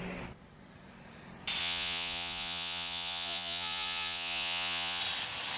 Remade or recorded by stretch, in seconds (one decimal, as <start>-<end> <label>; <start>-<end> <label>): 0.0-1.6 recorded; 1.6-5.0 remade; 5.0-5.6 recorded